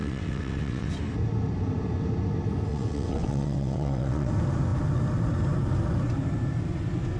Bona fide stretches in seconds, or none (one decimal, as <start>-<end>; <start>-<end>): 0.9-2.7; 4.3-7.2

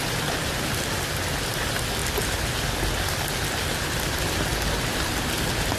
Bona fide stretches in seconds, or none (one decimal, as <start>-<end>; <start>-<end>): 2.0-4.0; 4.5-5.1